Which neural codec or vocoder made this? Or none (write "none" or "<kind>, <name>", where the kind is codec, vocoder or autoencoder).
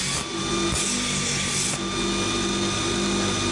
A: none